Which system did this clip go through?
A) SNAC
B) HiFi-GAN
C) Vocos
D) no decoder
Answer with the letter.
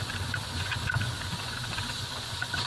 C